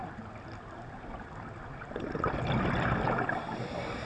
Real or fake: real